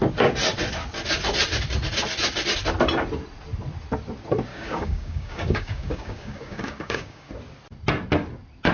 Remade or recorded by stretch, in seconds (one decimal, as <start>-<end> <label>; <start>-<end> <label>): 0.0-4.5 recorded; 4.5-7.3 remade; 7.3-8.7 recorded